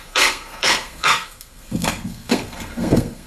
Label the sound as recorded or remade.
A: remade